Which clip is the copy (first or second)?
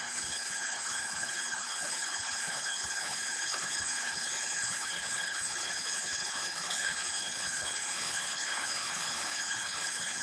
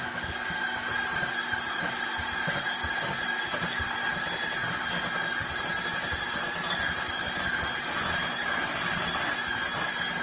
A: first